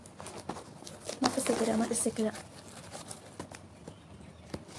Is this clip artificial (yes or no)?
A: no